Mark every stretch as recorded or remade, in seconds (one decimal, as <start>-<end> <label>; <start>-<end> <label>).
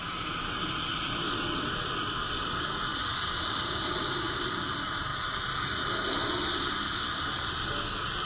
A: 0.0-0.9 recorded; 0.9-5.1 remade; 5.1-6.7 recorded; 6.7-8.3 remade